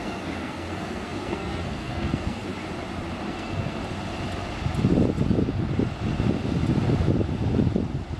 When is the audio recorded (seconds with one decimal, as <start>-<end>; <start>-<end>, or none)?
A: 2.5-3.3; 3.8-8.2